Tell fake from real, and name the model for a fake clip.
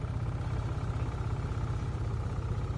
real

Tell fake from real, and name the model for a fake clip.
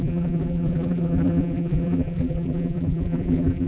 fake, vocoder, BigVGAN v2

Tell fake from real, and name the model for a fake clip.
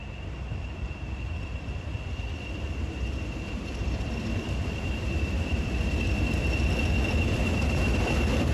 fake, vocoder, BigVGAN v2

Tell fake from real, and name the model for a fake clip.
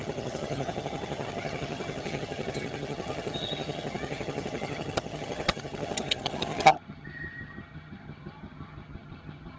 fake, vocoder, HiFi-GAN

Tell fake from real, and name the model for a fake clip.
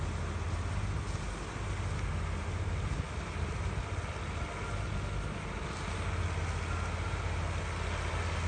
real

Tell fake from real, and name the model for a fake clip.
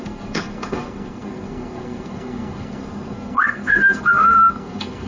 fake, codec, SNAC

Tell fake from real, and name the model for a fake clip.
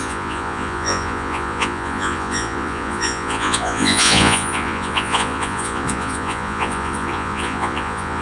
fake, vocoder, Vocos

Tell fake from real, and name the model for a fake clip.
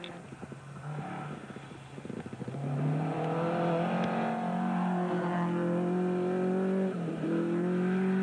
real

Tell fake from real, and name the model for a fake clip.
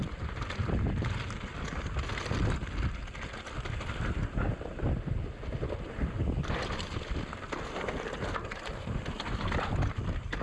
real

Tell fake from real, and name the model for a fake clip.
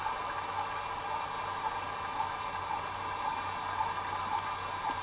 real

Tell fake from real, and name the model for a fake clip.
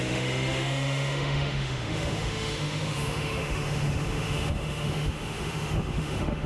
fake, autoencoder, DAC-VAE